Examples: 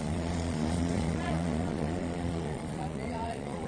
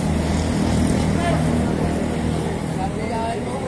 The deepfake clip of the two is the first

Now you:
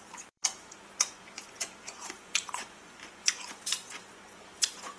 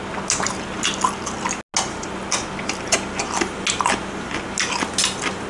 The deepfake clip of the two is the first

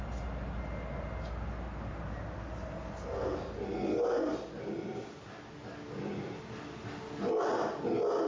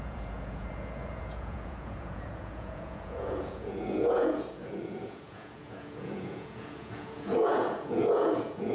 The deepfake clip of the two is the second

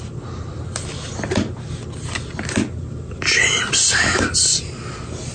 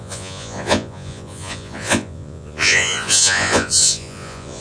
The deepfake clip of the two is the second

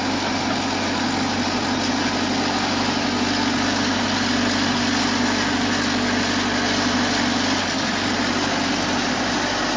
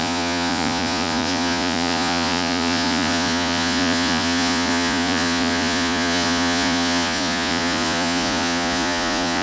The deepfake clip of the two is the second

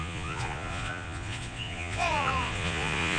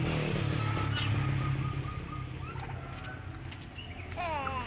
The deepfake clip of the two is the first